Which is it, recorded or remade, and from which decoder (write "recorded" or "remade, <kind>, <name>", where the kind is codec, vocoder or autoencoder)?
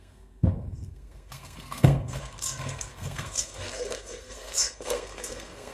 remade, codec, SNAC